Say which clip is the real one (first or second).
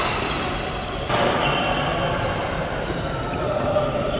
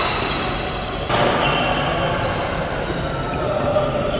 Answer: second